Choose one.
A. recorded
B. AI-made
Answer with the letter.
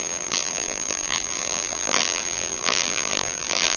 B